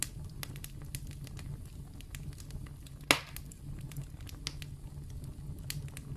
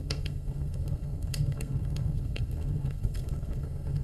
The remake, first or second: second